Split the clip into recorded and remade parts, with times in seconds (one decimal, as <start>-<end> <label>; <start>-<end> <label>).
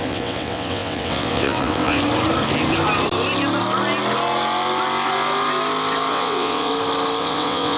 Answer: 0.0-2.0 remade; 2.0-6.1 recorded; 6.1-6.7 remade; 6.7-7.2 recorded; 7.2-7.8 remade